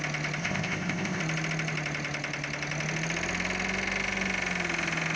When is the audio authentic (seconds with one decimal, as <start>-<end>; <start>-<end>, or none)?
0.0-0.4; 1.2-5.2